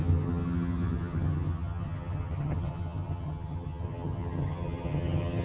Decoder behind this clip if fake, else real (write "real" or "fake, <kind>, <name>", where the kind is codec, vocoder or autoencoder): fake, vocoder, HiFi-GAN